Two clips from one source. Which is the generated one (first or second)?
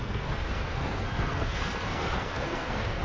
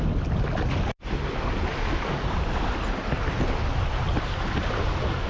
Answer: first